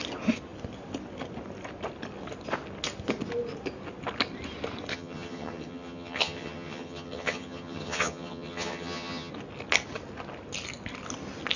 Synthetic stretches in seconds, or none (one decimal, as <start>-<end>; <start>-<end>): 4.9-9.3